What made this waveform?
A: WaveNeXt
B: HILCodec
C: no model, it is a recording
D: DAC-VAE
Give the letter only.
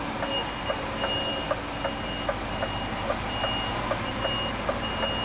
C